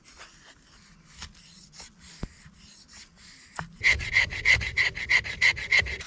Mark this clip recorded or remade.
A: recorded